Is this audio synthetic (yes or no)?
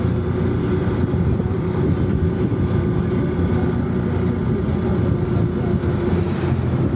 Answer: no